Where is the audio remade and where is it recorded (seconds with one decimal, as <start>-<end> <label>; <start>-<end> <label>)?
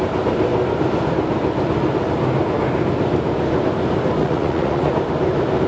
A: 0.0-4.2 recorded; 4.2-4.9 remade; 4.9-5.7 recorded